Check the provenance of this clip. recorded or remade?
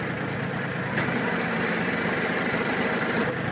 recorded